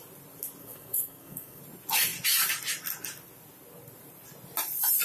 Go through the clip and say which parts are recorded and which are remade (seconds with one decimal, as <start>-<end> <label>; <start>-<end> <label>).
0.0-0.6 recorded; 0.6-1.6 remade; 1.6-5.0 recorded